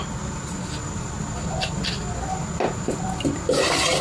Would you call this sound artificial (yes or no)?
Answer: no